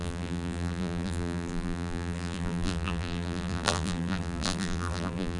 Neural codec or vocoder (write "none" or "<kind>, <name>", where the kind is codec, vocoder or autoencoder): vocoder, BigVGAN v2